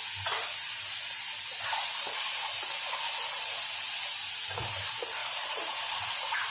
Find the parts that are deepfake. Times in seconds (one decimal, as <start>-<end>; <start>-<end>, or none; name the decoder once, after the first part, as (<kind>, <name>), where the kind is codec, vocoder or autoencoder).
5.2-6.1 (vocoder, BigVGAN v2)